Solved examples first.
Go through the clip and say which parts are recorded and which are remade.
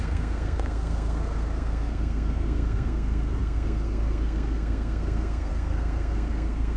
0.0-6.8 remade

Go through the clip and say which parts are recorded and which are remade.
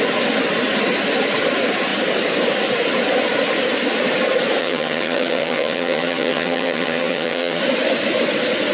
0.0-4.6 recorded; 4.6-7.6 remade; 7.6-8.7 recorded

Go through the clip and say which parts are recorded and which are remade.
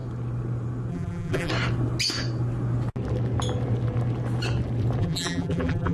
0.0-0.9 recorded; 0.9-1.5 remade; 1.5-5.0 recorded; 5.0-5.9 remade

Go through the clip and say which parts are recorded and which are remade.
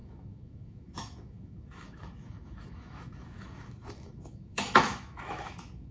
0.0-5.9 remade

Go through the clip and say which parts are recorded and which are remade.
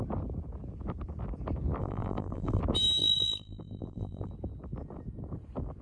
0.0-1.8 recorded; 1.8-2.6 remade; 2.6-3.0 recorded; 3.0-4.3 remade; 4.3-5.8 recorded